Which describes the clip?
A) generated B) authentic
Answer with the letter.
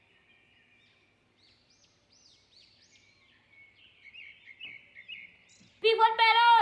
B